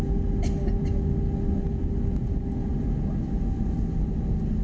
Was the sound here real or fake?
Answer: real